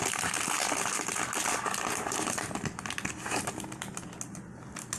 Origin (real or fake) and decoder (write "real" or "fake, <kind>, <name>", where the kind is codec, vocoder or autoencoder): real